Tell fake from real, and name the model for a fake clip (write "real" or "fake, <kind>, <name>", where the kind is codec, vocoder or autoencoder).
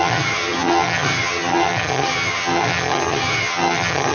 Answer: fake, vocoder, HiFi-GAN